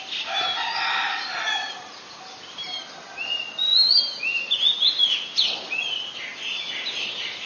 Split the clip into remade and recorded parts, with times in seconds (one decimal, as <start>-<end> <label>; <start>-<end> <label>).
0.0-7.5 recorded